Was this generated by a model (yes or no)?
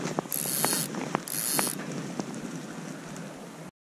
no